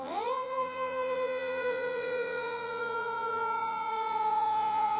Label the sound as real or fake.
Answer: fake